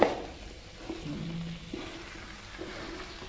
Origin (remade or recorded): recorded